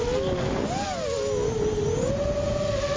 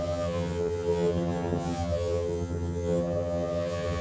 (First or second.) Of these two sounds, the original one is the first